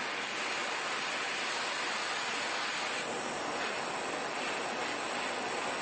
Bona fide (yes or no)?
yes